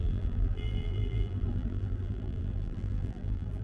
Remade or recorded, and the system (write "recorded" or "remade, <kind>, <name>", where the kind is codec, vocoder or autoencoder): remade, vocoder, BigVGAN v2